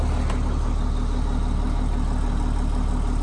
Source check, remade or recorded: recorded